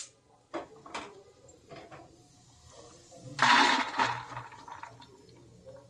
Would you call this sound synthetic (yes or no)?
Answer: no